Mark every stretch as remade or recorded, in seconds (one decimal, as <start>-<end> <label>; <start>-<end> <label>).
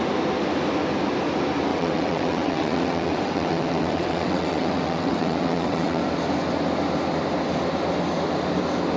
0.0-1.7 recorded; 1.7-6.0 remade; 6.0-9.0 recorded